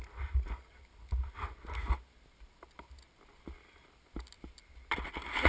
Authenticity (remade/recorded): recorded